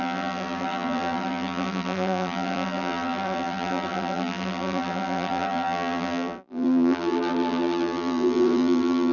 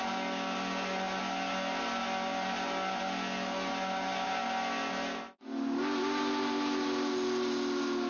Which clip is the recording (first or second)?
second